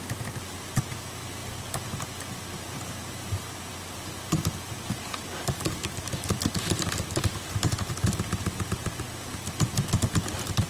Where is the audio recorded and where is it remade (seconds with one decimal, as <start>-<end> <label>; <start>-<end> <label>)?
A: 0.0-10.7 recorded